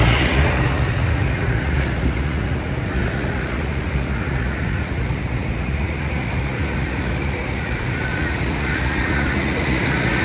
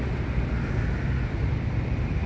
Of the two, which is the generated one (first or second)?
first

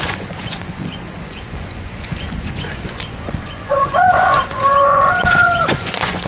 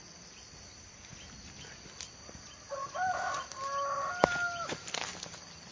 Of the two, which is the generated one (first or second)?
first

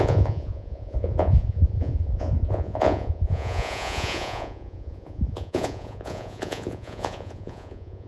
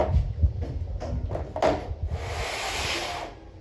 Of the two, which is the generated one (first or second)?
first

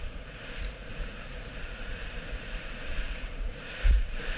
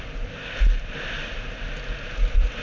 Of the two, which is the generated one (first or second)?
first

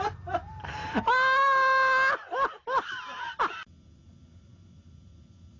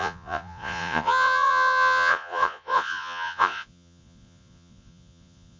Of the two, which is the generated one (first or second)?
second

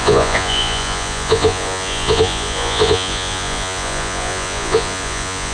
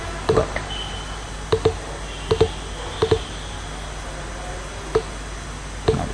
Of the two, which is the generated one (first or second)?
first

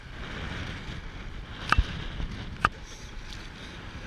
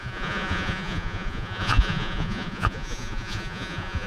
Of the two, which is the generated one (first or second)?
second